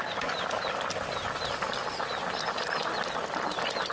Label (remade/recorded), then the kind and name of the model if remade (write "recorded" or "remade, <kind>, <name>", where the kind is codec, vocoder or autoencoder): recorded